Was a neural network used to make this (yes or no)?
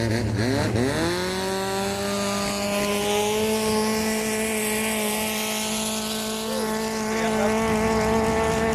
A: no